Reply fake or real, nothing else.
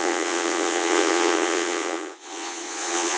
fake